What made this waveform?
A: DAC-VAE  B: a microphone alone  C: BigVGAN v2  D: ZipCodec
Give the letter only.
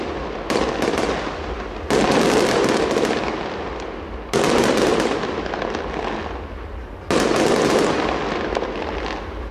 B